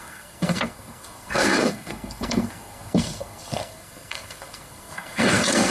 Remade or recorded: remade